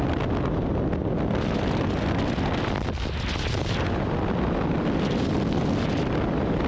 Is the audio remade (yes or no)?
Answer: no